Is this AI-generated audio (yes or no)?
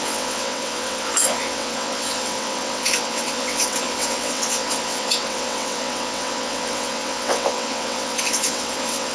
yes